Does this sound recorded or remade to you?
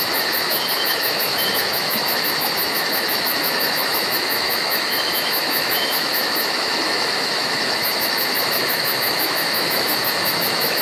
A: remade